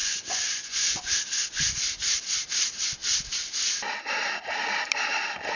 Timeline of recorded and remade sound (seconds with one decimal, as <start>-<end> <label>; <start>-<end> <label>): 0.0-1.0 remade; 1.0-5.6 recorded